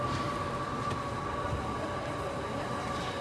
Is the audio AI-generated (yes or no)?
no